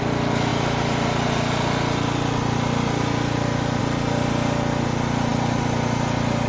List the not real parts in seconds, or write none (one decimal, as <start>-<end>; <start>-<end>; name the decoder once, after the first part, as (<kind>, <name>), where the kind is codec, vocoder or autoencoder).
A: none